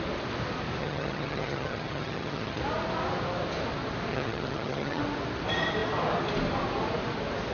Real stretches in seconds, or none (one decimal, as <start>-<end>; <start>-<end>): 0.0-0.8; 2.6-4.1; 5.0-7.5